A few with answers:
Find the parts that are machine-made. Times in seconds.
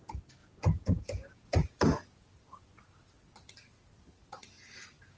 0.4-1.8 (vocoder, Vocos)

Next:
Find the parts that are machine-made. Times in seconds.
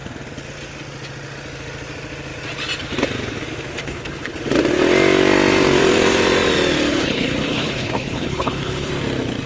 3.8-4.4 (codec, HILCodec); 6.9-8.9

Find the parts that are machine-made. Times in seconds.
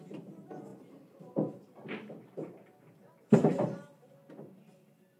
none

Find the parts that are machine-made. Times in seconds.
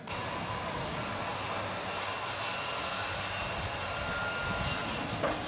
none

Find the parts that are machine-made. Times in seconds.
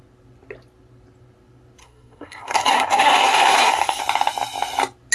1.8-4.0 (codec, SNAC)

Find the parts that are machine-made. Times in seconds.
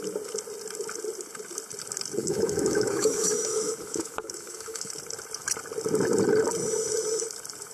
2.2-4.9 (autoencoder, DAC-VAE)